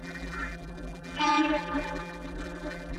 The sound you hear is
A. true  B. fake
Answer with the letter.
B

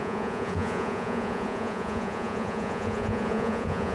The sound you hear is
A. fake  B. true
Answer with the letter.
A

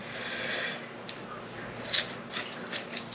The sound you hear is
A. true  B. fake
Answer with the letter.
A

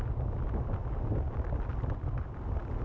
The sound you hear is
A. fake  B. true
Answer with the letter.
B